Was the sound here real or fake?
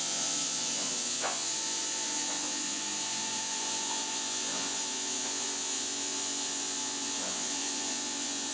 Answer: fake